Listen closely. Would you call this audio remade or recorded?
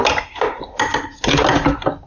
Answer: recorded